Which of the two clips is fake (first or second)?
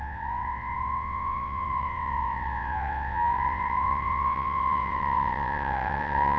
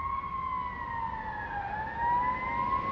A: first